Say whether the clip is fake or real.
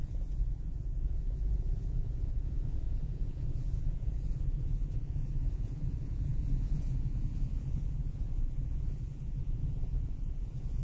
fake